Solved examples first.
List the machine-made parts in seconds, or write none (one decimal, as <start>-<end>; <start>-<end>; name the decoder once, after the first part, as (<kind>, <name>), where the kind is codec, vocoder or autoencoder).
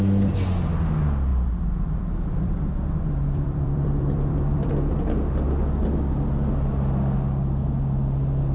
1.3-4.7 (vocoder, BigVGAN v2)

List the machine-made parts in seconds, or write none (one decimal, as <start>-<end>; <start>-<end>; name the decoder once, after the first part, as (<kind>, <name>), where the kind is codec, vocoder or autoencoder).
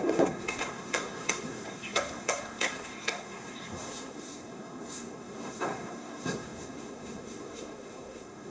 0.0-8.5 (codec, SNAC)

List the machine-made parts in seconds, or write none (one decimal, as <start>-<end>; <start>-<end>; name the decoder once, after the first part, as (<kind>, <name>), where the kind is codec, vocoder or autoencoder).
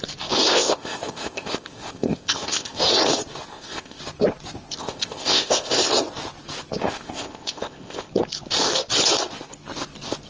0.5-2.8 (codec, ZipCodec); 3.5-4.0; 4.8-5.7; 6.8-8.1